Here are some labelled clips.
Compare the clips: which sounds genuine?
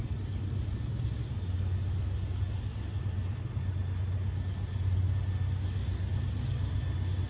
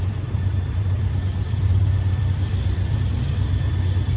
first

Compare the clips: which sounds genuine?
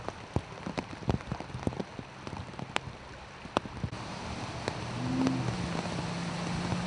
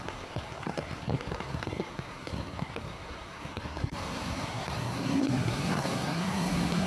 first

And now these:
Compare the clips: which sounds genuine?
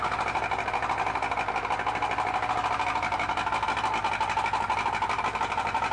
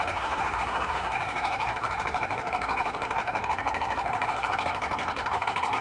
first